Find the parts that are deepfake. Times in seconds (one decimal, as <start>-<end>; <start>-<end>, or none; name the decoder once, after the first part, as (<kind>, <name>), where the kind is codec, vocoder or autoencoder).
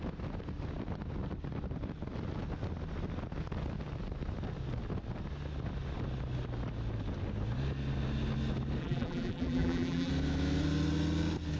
8.8-10.1 (vocoder, BigVGAN v2)